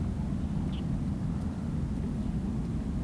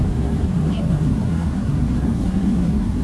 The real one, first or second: first